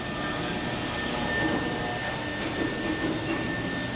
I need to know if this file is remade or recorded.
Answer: recorded